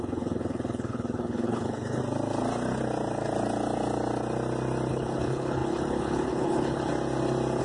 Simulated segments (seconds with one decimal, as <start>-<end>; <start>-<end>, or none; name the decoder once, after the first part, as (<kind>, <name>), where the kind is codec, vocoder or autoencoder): 0.0-2.0 (codec, HILCodec); 4.9-6.9